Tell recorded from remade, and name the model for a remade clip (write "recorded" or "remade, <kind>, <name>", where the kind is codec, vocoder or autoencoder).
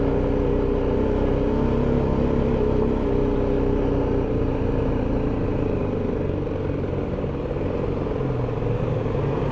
recorded